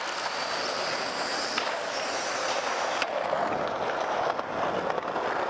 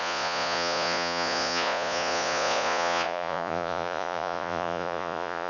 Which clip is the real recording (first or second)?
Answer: first